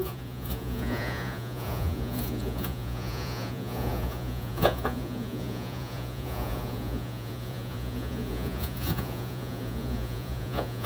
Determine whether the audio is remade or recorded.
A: remade